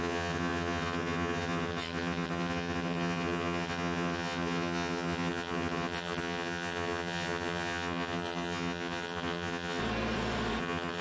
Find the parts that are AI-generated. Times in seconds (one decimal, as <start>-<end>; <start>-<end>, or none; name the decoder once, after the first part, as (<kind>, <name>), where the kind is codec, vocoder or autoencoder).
0.0-9.8 (vocoder, HiFi-GAN); 10.6-11.0